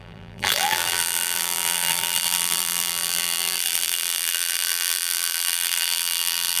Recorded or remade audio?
remade